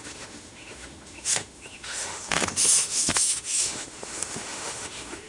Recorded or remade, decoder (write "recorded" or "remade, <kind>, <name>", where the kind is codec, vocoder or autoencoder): remade, autoencoder, DAC-VAE